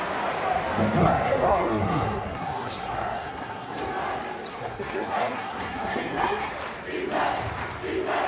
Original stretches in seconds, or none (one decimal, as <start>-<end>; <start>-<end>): 0.0-1.0; 3.8-4.5; 6.5-8.3